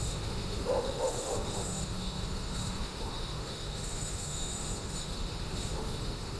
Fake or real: fake